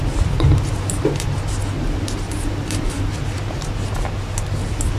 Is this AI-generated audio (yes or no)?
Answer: no